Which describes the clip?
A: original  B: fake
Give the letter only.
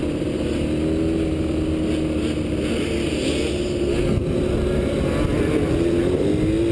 A